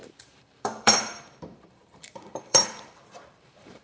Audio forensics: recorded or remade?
remade